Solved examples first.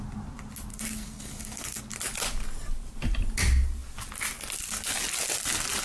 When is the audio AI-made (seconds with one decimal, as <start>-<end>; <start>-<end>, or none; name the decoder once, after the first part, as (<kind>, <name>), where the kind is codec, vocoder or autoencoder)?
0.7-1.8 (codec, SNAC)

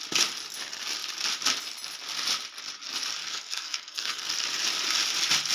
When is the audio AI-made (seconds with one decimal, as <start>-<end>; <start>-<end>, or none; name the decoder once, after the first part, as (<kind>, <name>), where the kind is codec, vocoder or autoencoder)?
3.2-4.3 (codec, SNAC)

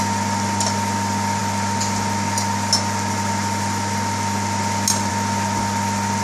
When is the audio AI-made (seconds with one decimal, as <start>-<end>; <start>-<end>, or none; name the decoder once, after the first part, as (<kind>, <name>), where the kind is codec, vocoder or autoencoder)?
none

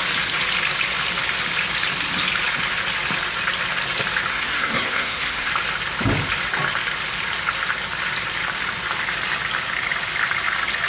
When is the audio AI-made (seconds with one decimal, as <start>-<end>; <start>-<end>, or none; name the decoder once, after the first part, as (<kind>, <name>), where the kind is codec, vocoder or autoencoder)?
4.3-5.5 (codec, SNAC)

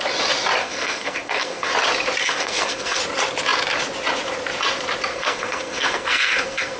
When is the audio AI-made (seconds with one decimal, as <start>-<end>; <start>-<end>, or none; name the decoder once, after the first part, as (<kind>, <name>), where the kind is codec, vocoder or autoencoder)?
0.6-1.7 (codec, SNAC); 2.2-3.0; 5.1-6.8

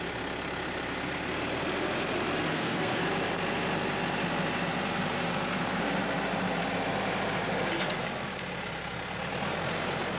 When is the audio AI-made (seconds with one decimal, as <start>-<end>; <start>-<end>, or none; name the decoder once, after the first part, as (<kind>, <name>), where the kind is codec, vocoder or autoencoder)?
2.5-3.0 (codec, SNAC)